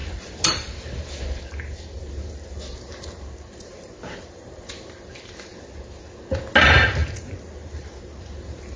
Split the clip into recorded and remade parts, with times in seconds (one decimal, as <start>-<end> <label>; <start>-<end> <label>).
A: 0.0-5.5 remade; 5.5-6.6 recorded; 6.6-8.8 remade